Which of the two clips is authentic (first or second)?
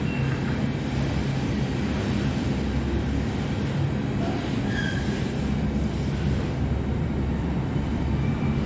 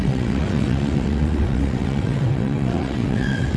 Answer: first